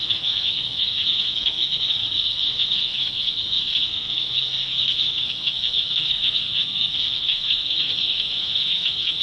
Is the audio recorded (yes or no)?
no